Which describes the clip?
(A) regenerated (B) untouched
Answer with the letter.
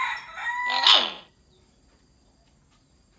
B